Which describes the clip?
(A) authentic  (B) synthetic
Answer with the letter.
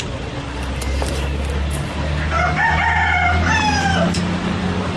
A